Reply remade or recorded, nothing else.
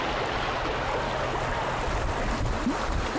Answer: recorded